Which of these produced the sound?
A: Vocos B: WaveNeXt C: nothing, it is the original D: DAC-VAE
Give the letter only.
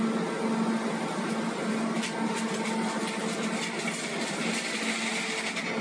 C